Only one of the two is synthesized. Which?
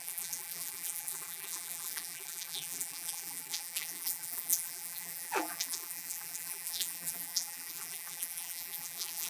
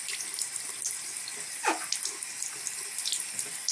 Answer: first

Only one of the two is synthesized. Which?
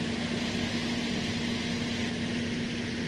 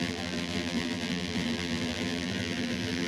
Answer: second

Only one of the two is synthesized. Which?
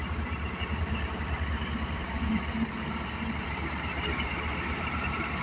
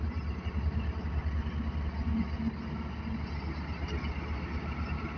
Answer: first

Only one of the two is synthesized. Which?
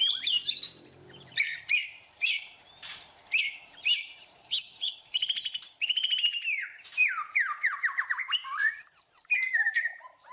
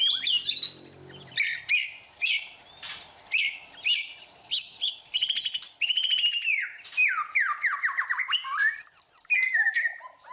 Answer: first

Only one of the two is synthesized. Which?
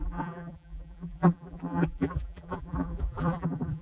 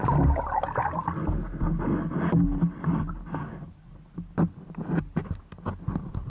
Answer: first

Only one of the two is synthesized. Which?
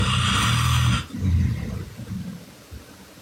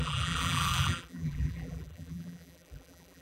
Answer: second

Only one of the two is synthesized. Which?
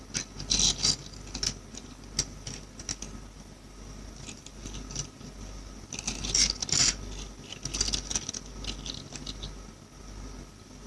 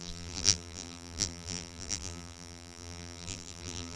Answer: second